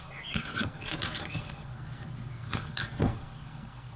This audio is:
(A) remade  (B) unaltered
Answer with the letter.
A